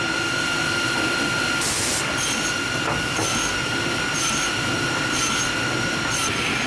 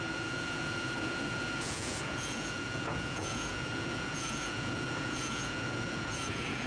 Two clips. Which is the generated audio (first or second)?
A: second